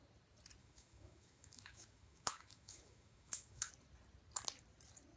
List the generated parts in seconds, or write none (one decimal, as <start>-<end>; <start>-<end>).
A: 0.6-3.7